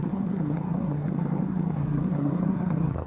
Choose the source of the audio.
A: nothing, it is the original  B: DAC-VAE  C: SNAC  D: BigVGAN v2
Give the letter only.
C